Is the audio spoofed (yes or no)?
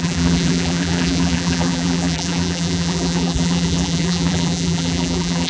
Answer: yes